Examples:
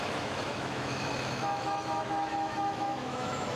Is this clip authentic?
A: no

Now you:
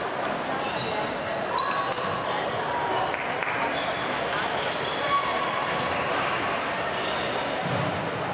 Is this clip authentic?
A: yes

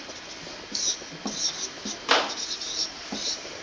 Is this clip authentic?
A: yes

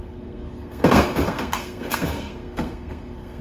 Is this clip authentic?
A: no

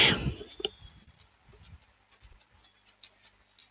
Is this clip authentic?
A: yes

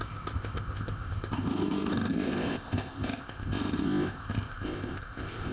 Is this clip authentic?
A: no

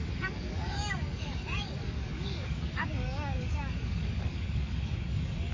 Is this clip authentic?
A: no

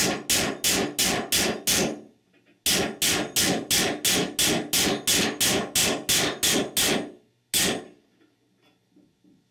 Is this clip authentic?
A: yes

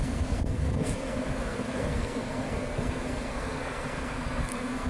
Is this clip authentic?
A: no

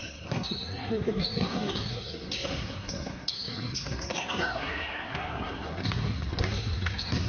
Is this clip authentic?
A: no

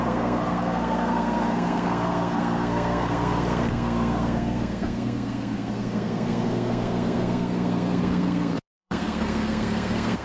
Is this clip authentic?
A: no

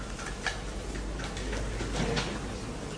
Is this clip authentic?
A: yes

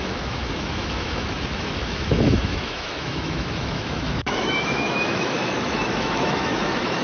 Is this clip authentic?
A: no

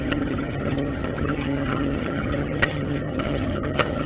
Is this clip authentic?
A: no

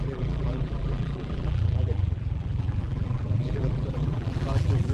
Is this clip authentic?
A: no